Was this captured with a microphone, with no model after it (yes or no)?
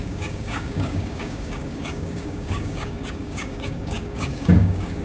no